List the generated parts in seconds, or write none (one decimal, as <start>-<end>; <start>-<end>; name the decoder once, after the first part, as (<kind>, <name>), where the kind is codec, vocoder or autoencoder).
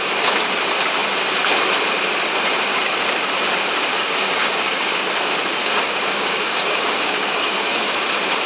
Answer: 3.9-5.0 (codec, DAC); 5.6-7.9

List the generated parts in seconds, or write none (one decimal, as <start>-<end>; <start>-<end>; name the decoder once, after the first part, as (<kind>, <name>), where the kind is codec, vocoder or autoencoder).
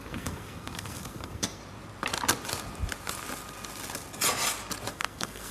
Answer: 0.0-1.6 (codec, SNAC); 4.9-5.5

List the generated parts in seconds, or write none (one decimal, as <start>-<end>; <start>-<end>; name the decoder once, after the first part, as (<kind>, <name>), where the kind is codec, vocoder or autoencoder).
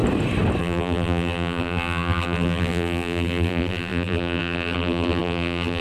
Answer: 0.6-5.8 (vocoder, BigVGAN v2)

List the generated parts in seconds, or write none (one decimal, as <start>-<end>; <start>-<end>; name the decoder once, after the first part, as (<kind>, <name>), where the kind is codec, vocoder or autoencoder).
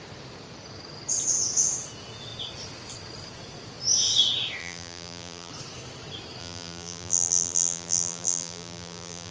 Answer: 4.6-5.5 (vocoder, BigVGAN v2); 6.4-9.3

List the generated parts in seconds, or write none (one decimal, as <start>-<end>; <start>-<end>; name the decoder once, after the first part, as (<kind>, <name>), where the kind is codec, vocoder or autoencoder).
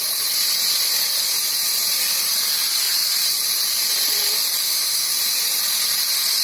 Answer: 4.6-5.1 (autoencoder, DAC-VAE)